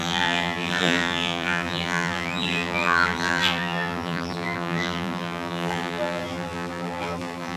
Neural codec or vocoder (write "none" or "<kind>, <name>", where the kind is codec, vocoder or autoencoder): vocoder, BigVGAN v2